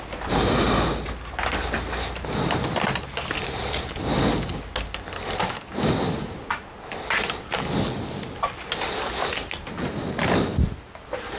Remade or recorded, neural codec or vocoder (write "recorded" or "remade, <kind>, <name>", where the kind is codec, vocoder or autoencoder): recorded